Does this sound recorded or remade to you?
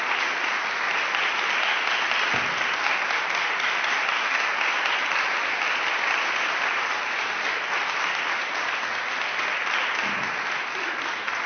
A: recorded